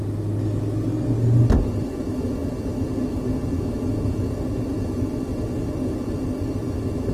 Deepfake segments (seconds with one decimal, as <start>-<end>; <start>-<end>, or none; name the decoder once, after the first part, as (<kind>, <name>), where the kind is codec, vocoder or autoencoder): none

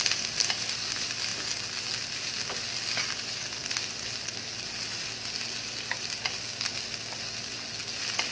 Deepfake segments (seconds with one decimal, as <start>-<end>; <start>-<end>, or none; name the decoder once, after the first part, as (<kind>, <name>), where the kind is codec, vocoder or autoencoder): none

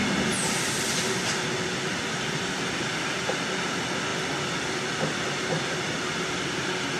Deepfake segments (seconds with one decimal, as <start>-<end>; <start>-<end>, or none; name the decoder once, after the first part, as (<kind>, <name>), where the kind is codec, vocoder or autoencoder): none

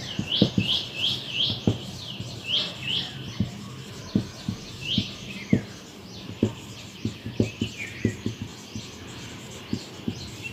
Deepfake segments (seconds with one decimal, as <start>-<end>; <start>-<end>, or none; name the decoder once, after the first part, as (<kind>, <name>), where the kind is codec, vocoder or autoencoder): 0.0-8.5 (vocoder, BigVGAN v2); 9.4-10.5

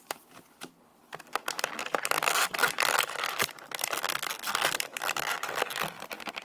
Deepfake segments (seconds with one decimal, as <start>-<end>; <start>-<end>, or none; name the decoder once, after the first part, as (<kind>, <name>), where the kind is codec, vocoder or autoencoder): none

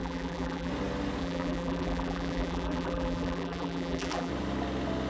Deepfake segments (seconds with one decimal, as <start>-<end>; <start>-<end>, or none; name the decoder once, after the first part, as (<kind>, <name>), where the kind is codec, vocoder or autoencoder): 0.0-0.7 (vocoder, BigVGAN v2); 1.2-4.3

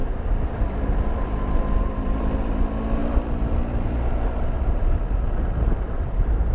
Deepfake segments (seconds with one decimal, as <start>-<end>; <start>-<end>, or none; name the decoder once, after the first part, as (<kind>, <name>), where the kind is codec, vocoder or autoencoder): 0.0-2.6 (vocoder, BigVGAN v2); 3.0-6.5